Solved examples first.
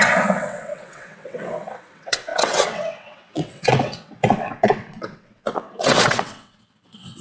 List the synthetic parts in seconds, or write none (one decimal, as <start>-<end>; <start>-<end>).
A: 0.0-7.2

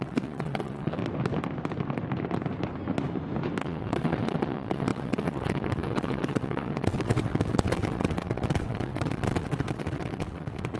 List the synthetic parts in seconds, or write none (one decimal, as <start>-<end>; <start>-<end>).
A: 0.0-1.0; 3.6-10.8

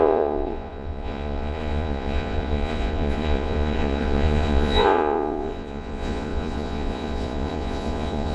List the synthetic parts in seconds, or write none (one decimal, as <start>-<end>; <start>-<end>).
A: 0.0-8.3

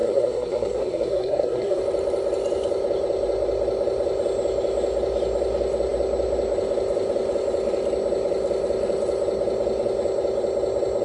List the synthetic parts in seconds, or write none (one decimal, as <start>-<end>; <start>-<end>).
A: 0.0-1.8

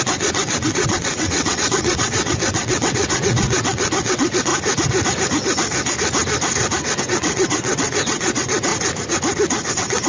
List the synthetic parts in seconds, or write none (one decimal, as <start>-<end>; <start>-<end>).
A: 0.0-4.5; 7.0-8.7; 9.7-10.1

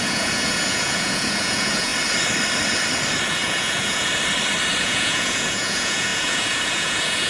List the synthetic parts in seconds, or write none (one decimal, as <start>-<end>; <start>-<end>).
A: 0.0-1.9; 3.3-4.1; 4.8-7.3

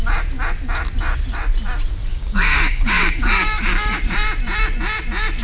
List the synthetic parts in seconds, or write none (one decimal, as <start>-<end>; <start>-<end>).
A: 2.1-4.0

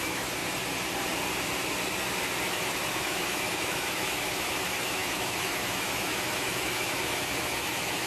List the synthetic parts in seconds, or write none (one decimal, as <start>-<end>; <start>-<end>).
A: 0.0-0.4; 2.5-8.1